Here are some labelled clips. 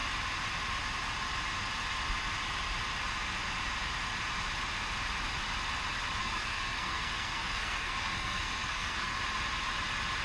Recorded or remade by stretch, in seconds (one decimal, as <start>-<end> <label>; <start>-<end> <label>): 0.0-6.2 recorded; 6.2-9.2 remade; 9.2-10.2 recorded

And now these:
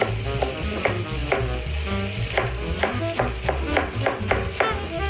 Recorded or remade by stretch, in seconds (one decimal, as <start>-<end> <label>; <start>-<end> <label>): 0.0-5.1 recorded

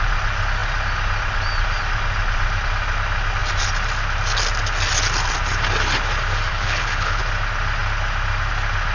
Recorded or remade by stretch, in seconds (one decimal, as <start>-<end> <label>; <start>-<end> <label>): 0.0-6.5 recorded; 6.5-7.2 remade; 7.2-8.9 recorded

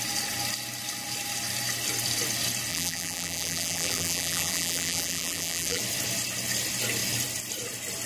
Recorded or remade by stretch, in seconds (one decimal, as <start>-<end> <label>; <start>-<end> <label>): 0.0-2.7 recorded; 2.7-5.8 remade; 5.8-8.1 recorded

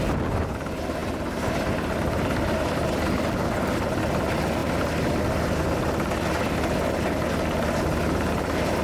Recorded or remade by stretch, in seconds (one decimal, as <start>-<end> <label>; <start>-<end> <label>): 0.0-8.8 recorded

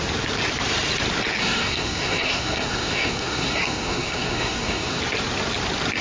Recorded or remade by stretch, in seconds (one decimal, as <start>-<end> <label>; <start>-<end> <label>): 0.0-1.4 recorded; 1.4-5.0 remade; 5.0-6.0 recorded

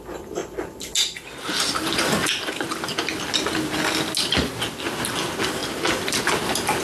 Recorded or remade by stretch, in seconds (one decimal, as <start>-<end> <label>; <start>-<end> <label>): 0.0-6.8 recorded

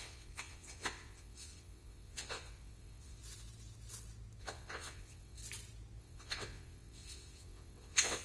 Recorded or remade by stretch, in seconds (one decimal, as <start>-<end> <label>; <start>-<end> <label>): 0.0-3.2 remade; 3.2-4.4 recorded; 4.4-5.4 remade; 5.4-6.0 recorded; 6.0-8.2 remade